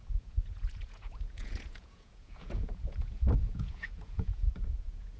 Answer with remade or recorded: remade